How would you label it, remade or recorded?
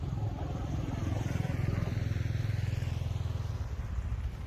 recorded